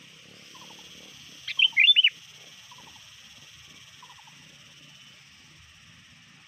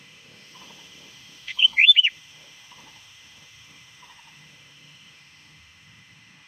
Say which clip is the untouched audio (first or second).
first